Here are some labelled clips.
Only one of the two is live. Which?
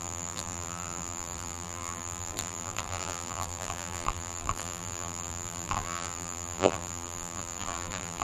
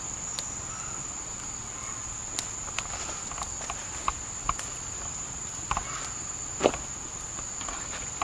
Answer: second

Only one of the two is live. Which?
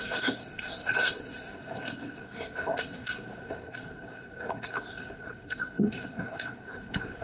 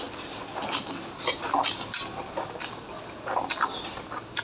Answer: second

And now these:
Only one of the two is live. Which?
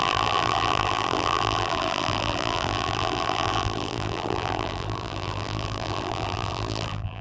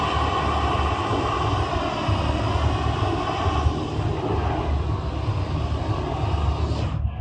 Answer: second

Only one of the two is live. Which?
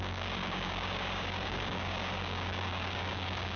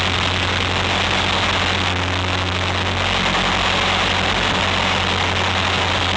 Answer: second